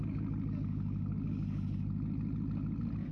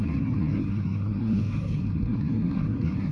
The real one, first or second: first